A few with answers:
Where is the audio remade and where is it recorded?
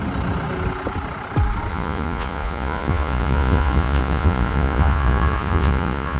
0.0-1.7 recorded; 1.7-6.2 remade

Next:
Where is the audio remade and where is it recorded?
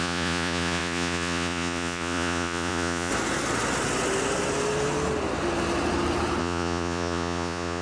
0.0-3.1 remade; 3.1-6.4 recorded; 6.4-7.8 remade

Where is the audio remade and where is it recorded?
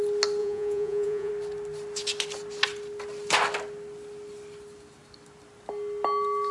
0.0-0.4 recorded; 0.4-1.3 remade; 1.3-6.5 recorded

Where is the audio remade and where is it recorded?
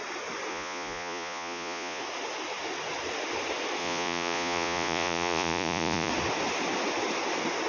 0.0-0.5 recorded; 0.5-2.0 remade; 2.0-3.8 recorded; 3.8-6.1 remade; 6.1-7.7 recorded